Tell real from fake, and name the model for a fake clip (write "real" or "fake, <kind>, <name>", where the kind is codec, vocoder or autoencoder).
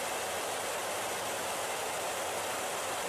real